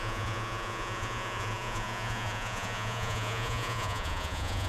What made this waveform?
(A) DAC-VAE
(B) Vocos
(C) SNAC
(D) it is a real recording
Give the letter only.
B